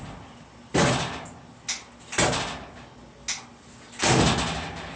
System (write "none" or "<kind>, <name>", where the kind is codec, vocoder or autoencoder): none